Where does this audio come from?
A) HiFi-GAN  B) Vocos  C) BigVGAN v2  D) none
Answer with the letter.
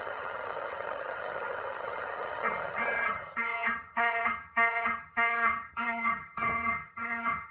A